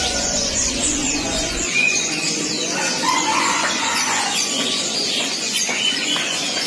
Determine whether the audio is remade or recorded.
remade